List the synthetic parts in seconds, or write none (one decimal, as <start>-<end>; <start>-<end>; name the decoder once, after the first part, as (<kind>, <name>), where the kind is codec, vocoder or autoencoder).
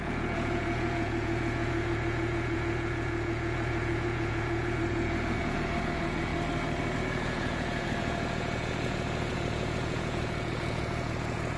0.0-6.3 (vocoder, Vocos); 7.0-11.6